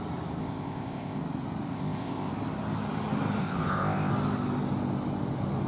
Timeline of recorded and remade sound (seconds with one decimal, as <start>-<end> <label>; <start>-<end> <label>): 0.0-0.4 recorded; 0.4-1.2 remade; 1.2-1.7 recorded; 1.7-2.3 remade; 2.3-3.4 recorded; 3.4-4.1 remade; 4.1-5.7 recorded